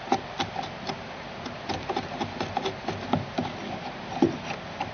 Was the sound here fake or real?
real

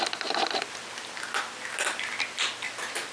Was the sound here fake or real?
real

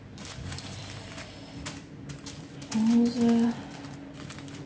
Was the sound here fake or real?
real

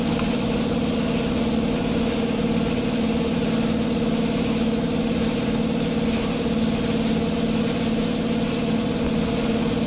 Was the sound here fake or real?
real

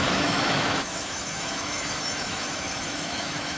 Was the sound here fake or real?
fake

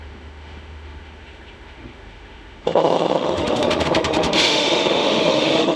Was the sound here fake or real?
fake